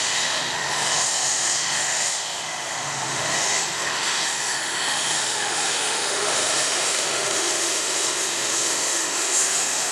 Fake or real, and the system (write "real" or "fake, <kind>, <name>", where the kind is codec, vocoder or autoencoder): fake, autoencoder, DAC-VAE